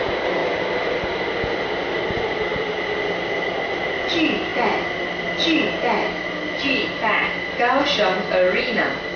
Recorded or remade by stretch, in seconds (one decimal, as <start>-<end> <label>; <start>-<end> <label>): 0.0-9.2 recorded